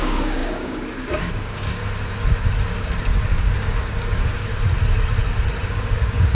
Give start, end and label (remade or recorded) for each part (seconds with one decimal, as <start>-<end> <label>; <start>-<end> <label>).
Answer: 0.0-1.8 remade; 1.8-3.0 recorded; 3.0-4.5 remade; 4.5-5.7 recorded; 5.7-6.3 remade